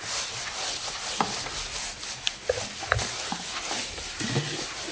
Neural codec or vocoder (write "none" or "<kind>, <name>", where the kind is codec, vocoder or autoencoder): none